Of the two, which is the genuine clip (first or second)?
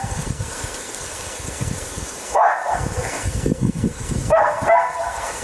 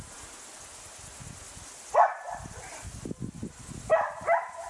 second